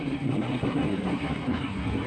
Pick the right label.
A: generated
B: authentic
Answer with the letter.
A